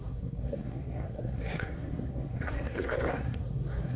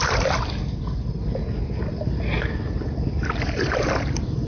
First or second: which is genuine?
second